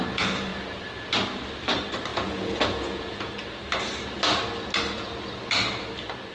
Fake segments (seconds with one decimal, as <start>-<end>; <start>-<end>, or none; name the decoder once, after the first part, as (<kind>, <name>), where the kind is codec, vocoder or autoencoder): 2.1-3.3 (vocoder, Vocos)